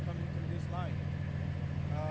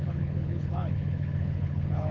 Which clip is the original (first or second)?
first